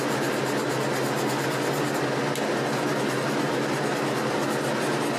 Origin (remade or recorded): recorded